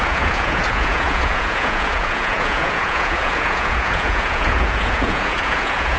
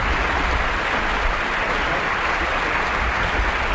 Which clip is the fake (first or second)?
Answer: first